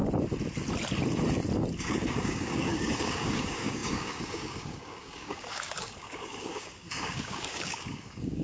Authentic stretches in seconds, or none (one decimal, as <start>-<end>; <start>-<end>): 0.0-1.8